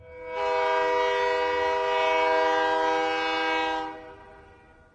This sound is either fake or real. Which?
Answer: real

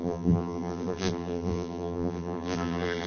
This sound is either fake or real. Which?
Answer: fake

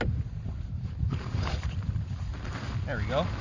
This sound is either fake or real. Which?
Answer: real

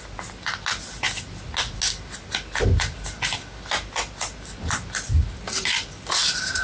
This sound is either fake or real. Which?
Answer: real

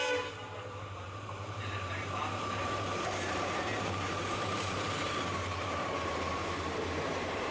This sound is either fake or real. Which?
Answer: fake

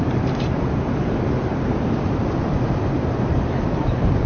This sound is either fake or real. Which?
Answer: fake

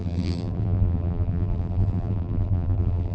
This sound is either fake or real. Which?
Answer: fake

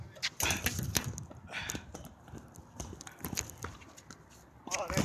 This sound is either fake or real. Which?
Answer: fake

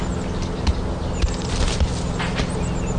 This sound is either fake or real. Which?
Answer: real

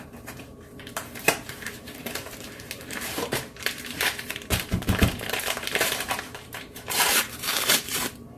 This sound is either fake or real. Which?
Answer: fake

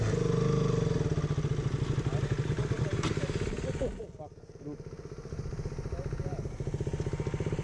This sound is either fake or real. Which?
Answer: real